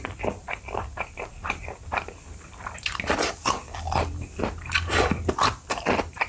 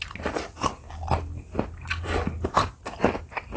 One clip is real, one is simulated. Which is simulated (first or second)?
first